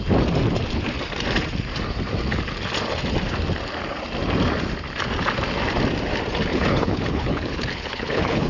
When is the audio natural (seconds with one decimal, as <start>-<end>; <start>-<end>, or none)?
0.0-6.5